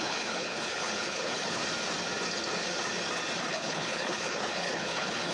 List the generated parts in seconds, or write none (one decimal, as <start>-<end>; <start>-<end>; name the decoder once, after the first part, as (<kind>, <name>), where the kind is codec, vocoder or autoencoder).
0.0-1.6 (codec, HILCodec); 3.5-5.3